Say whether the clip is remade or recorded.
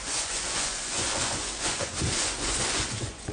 remade